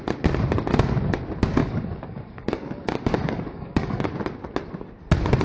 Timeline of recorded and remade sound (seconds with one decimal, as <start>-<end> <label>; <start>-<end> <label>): 0.0-1.6 recorded; 1.6-4.1 remade; 4.1-5.4 recorded